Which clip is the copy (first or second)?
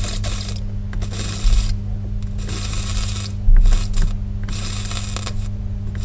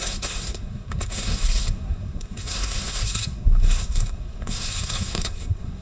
second